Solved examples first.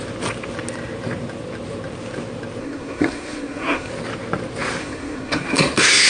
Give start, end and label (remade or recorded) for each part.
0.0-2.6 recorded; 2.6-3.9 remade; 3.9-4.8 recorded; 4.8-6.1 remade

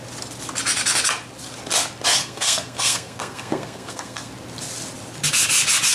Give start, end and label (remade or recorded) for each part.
0.0-2.2 recorded; 2.2-4.3 remade; 4.3-5.9 recorded

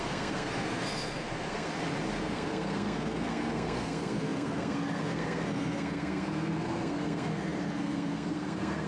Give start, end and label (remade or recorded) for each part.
0.0-1.7 remade; 1.7-2.2 recorded; 2.2-8.9 remade

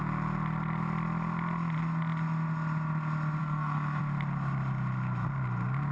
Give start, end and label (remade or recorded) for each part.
0.0-3.4 recorded; 3.4-4.0 remade; 4.0-5.9 recorded

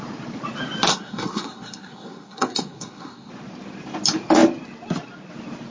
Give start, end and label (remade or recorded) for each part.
0.0-0.9 recorded; 0.9-3.3 remade; 3.3-5.7 recorded